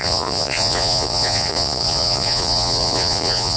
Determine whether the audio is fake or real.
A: fake